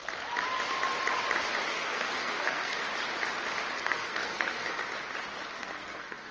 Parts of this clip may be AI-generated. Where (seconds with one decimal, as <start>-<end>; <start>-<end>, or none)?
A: 1.7-2.9; 3.8-4.8; 5.5-6.3